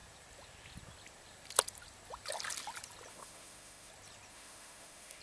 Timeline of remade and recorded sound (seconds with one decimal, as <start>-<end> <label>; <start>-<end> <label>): 0.0-3.1 recorded; 3.1-3.9 remade; 3.9-4.3 recorded; 4.3-5.2 remade